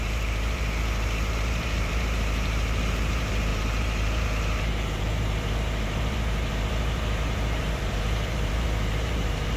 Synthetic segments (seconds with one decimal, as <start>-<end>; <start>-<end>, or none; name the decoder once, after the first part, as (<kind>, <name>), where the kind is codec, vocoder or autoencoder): 0.0-9.6 (vocoder, BigVGAN v2)